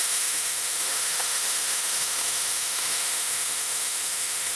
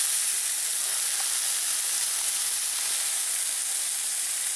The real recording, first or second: second